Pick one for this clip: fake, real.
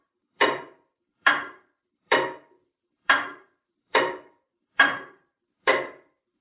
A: fake